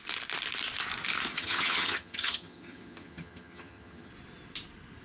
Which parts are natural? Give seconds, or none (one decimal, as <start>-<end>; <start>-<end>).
0.0-1.3; 4.1-5.0